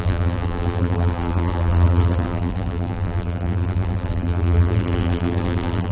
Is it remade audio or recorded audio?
remade